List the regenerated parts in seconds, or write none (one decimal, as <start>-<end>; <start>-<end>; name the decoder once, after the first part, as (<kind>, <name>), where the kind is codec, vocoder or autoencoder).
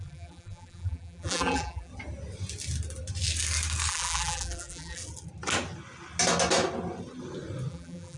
0.0-1.9 (vocoder, BigVGAN v2); 3.9-5.0; 7.7-8.2